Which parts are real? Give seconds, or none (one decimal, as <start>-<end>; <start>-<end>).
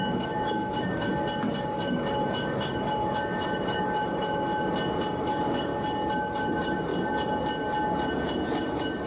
1.1-1.6; 4.5-5.2; 5.7-6.2; 6.9-8.6